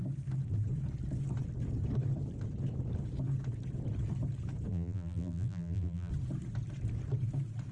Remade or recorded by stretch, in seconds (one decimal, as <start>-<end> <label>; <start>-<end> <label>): 0.0-4.7 recorded; 4.7-6.1 remade; 6.1-7.7 recorded